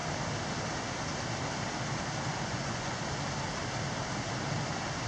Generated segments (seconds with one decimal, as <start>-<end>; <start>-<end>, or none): 2.3-3.0

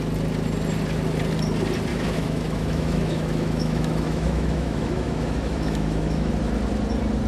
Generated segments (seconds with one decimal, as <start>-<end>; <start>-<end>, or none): 1.9-6.3

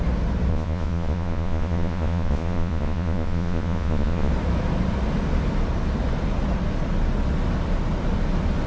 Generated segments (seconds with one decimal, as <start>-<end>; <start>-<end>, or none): 0.5-4.3